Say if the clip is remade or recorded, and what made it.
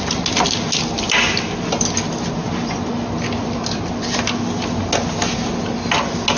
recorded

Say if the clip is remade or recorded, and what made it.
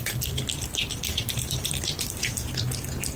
remade, vocoder, BigVGAN v2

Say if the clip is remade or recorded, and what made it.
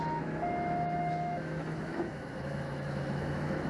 remade, autoencoder, DAC-VAE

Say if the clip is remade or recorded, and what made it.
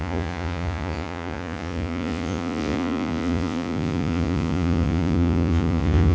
remade, vocoder, Vocos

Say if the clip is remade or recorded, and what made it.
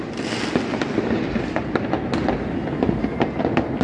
recorded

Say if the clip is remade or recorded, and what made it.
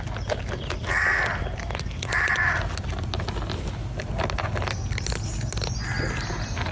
recorded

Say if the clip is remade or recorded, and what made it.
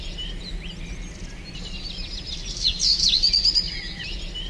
recorded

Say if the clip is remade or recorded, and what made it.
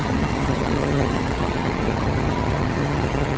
remade, vocoder, HiFi-GAN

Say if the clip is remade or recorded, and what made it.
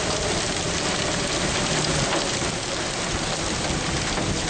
recorded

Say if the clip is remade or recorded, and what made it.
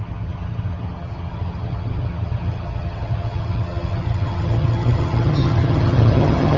remade, vocoder, HiFi-GAN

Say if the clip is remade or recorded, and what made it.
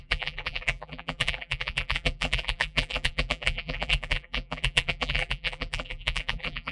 remade, vocoder, BigVGAN v2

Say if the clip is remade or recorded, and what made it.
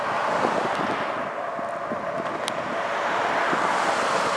recorded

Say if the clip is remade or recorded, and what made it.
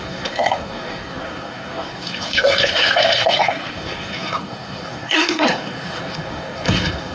remade, codec, SNAC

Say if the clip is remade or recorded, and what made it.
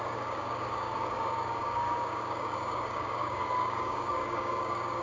remade, codec, DAC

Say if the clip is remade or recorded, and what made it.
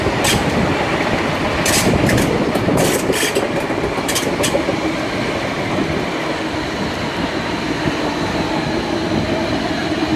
recorded